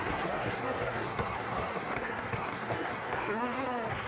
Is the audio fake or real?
fake